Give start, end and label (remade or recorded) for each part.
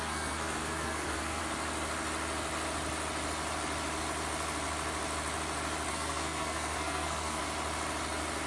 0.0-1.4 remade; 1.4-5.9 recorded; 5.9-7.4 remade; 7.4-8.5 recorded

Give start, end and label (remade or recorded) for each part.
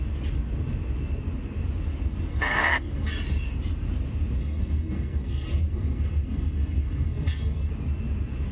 0.0-2.3 recorded; 2.3-3.1 remade; 3.1-4.4 recorded; 4.4-7.7 remade; 7.7-8.5 recorded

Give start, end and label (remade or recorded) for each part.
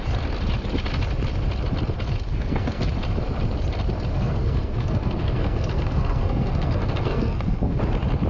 0.0-2.3 recorded; 2.3-2.8 remade; 2.8-4.1 recorded; 4.1-7.8 remade; 7.8-8.3 recorded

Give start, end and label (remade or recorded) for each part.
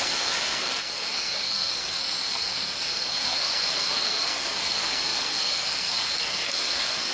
0.0-7.1 remade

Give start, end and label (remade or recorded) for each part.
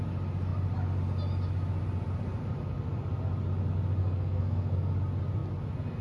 0.0-4.0 recorded; 4.0-4.9 remade; 4.9-6.0 recorded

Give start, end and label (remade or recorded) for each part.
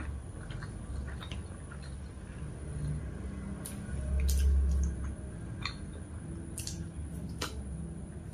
0.0-8.3 recorded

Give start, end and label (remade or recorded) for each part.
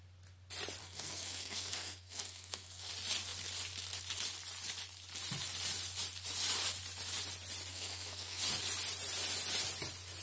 0.0-0.8 recorded; 0.8-2.9 remade; 2.9-7.7 recorded; 7.7-8.4 remade; 8.4-10.2 recorded